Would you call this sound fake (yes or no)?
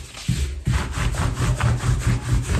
no